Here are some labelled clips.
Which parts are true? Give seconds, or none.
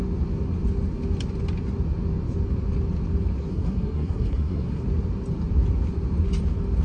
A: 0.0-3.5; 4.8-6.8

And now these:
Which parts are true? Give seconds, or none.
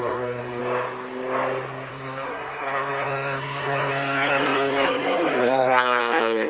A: 0.6-1.9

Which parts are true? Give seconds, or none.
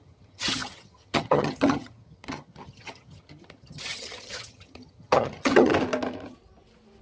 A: 5.7-7.0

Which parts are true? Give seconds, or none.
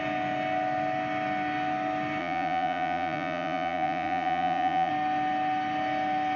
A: 0.0-2.2; 4.9-6.4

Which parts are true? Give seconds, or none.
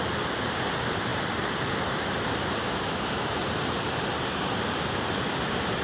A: 0.0-2.6; 3.4-5.8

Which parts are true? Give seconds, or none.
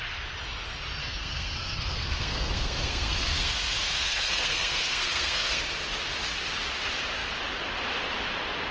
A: 0.0-1.0; 5.6-8.7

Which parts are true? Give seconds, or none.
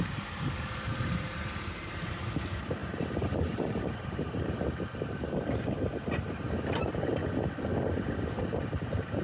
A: 7.2-7.8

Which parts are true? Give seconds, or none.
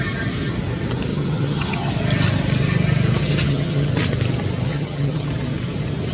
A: 0.0-1.1; 1.9-3.2; 3.9-4.7; 5.3-6.1